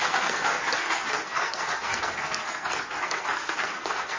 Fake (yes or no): yes